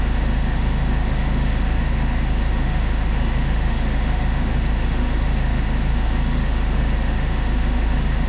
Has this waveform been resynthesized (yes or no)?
yes